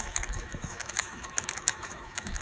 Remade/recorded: remade